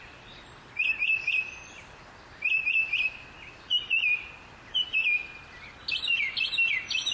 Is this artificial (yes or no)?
no